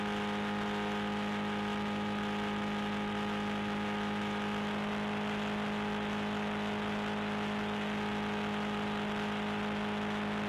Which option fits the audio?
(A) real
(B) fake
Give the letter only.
A